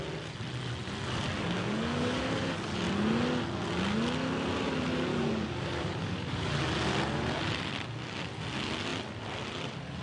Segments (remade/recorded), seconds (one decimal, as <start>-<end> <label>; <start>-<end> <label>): 0.0-1.6 recorded; 1.6-2.8 remade; 2.8-5.1 recorded; 5.1-6.5 remade; 6.5-10.0 recorded